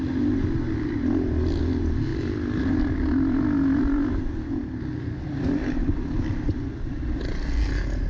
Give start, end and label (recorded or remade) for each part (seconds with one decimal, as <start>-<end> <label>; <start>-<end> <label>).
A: 0.0-8.1 recorded